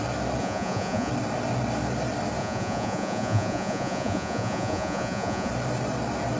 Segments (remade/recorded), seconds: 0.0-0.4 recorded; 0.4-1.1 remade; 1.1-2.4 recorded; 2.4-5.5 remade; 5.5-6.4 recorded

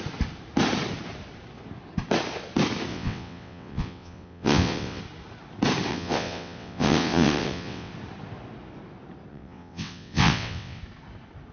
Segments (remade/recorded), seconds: 0.0-2.9 recorded; 2.9-5.0 remade; 5.0-5.9 recorded; 5.9-7.9 remade; 7.9-9.3 recorded; 9.3-10.8 remade; 10.8-11.5 recorded

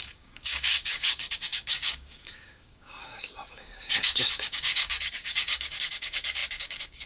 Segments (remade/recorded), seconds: 0.0-7.1 remade